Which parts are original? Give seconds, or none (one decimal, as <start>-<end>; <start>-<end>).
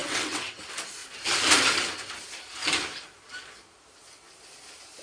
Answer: 0.6-5.0